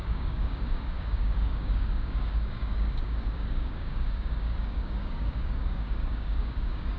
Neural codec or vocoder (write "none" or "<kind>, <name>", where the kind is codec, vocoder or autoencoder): codec, DAC